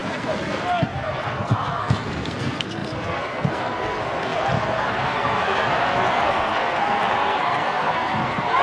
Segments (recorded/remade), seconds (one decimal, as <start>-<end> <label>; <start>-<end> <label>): 0.0-8.6 remade